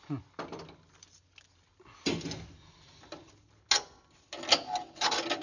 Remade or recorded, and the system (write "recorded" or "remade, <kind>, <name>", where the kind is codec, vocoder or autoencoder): recorded